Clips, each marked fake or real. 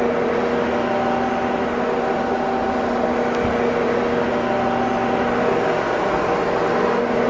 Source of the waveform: real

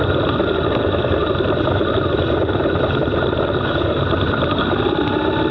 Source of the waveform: real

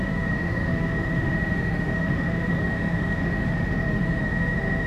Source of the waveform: fake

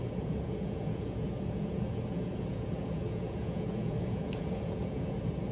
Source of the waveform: fake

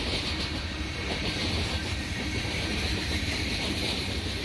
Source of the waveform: fake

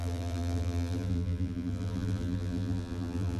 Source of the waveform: fake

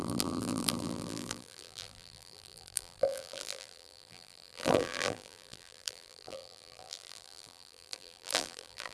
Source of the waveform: fake